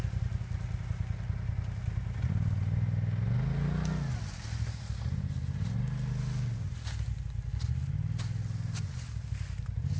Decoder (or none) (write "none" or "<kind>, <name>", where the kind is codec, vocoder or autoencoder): none